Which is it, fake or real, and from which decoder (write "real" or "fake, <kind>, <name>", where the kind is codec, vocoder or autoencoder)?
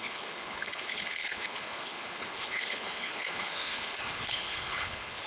fake, codec, HILCodec